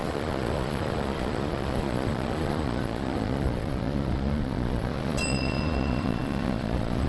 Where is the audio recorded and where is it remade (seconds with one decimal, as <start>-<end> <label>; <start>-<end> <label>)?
0.0-7.1 remade